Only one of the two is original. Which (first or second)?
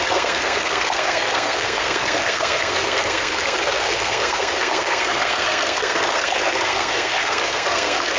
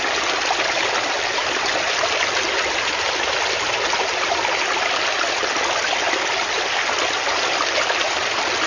second